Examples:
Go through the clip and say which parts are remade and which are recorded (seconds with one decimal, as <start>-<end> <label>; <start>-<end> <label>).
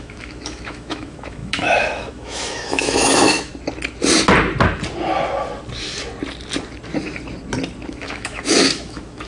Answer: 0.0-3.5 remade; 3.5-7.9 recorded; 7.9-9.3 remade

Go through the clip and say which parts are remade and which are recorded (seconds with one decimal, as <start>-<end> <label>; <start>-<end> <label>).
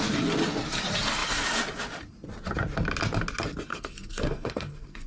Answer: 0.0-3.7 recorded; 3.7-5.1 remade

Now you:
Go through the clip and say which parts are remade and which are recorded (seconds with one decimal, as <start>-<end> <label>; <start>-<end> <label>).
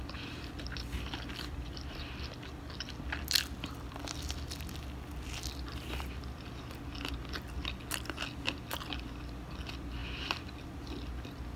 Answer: 0.0-11.6 recorded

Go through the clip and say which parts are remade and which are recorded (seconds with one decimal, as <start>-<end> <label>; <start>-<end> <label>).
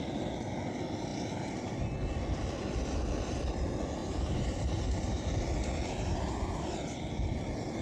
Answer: 0.0-4.0 recorded; 4.0-5.3 remade; 5.3-7.8 recorded